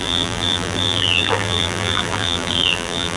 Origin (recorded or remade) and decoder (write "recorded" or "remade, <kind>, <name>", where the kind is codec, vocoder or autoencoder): remade, vocoder, BigVGAN v2